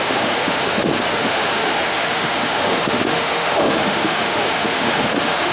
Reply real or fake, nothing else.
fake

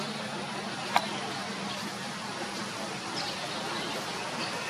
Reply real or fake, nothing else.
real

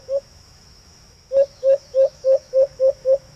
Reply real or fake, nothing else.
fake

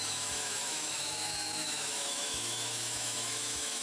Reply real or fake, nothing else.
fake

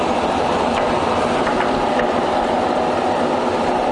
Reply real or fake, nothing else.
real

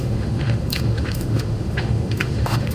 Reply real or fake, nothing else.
fake